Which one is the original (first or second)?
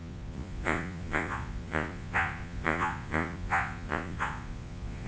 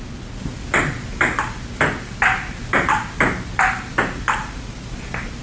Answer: second